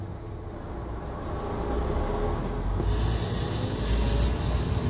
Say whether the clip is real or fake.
real